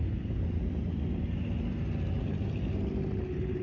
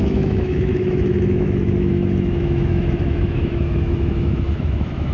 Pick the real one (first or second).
first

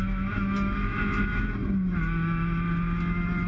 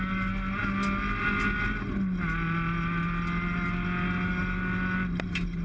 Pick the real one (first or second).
second